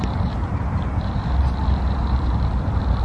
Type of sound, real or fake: fake